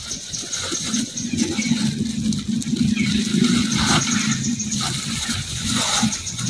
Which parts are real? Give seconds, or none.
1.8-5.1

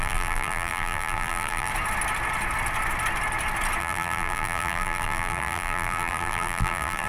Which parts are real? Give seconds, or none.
1.7-3.8

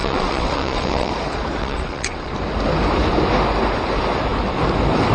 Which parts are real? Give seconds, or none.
1.1-1.6; 2.3-5.1

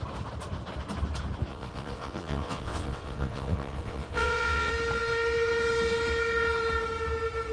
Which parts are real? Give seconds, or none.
0.0-1.5; 4.7-7.5

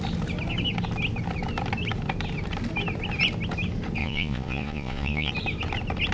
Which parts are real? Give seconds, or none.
0.0-4.0; 5.3-6.1

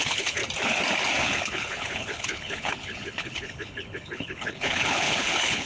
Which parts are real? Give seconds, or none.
0.4-1.2